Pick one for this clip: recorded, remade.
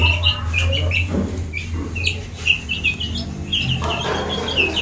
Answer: recorded